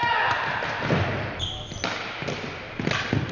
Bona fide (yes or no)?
yes